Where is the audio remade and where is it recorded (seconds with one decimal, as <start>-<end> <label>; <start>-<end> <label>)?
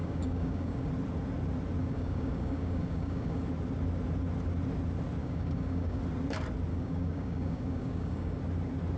0.0-0.9 remade; 0.9-1.8 recorded; 1.8-3.5 remade; 3.5-5.2 recorded; 5.2-6.0 remade; 6.0-6.7 recorded; 6.7-8.4 remade; 8.4-9.0 recorded